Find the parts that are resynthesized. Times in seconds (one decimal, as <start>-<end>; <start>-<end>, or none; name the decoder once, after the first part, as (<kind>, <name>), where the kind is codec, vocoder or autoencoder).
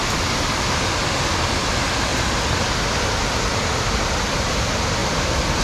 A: 0.0-0.7 (vocoder, BigVGAN v2); 5.0-5.6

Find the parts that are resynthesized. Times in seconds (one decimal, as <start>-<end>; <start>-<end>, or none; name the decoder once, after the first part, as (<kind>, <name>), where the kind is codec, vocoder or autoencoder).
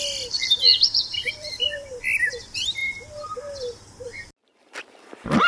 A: 0.7-2.0 (vocoder, BigVGAN v2)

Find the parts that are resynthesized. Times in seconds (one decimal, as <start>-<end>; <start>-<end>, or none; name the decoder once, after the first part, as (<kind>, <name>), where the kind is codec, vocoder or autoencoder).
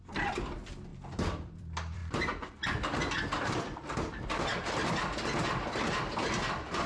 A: 0.0-6.9 (vocoder, BigVGAN v2)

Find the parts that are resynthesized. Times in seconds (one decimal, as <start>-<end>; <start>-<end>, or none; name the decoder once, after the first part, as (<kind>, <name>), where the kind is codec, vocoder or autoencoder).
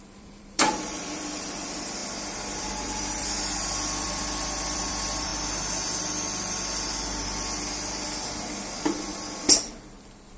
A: 0.0-2.0 (vocoder, BigVGAN v2); 2.6-5.3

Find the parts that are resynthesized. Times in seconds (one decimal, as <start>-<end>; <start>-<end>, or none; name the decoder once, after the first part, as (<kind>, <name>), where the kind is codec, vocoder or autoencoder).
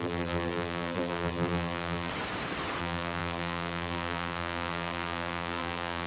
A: 0.0-2.1 (vocoder, BigVGAN v2); 2.8-6.1